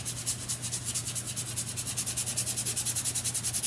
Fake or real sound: real